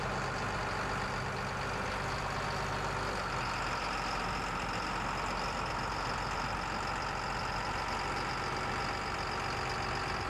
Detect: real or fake real